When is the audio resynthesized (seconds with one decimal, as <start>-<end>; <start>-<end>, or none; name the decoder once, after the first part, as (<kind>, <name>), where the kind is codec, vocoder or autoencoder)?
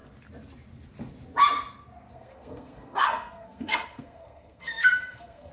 2.1-5.5 (codec, SNAC)